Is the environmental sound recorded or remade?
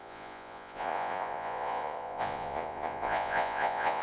remade